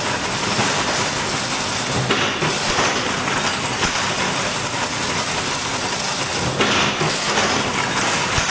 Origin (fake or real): real